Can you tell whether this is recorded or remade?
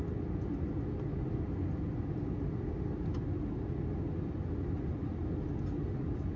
recorded